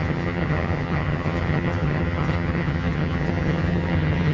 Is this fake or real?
fake